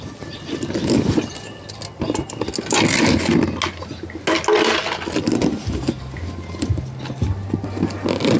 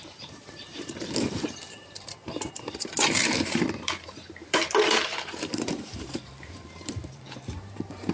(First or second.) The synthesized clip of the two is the second